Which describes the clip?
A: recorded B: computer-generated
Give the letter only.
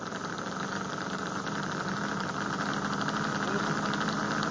A